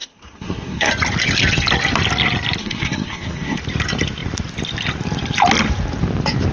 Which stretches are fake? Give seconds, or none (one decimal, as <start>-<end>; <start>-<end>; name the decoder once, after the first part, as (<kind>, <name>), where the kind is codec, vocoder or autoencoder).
0.0-0.9 (codec, SNAC); 2.6-3.6